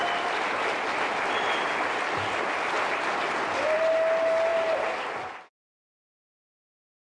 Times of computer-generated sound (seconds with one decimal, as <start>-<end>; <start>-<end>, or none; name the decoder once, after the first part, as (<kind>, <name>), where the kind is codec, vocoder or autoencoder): none